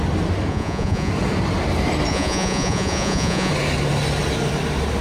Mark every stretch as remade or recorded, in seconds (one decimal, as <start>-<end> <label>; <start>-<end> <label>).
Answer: 0.0-0.5 recorded; 0.5-1.1 remade; 1.1-2.1 recorded; 2.1-3.5 remade; 3.5-5.0 recorded